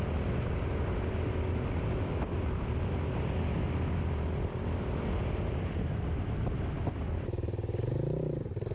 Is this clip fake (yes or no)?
no